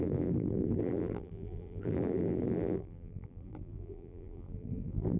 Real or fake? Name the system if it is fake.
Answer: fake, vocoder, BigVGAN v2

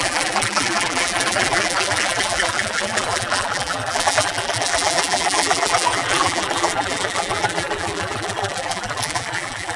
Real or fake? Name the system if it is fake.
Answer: fake, vocoder, BigVGAN v2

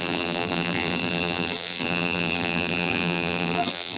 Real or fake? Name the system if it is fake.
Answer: fake, vocoder, BigVGAN v2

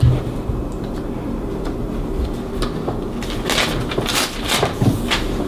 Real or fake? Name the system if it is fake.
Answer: real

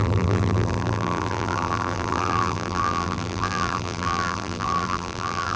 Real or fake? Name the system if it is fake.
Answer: fake, vocoder, BigVGAN v2